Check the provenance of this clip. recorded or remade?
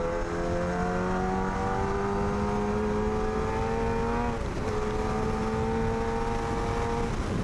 recorded